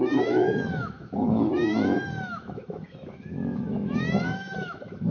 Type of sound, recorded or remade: remade